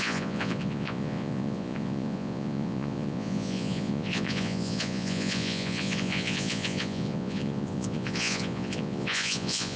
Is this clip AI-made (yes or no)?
yes